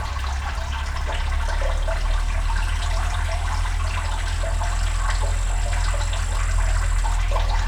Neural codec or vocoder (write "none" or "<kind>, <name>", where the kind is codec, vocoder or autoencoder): none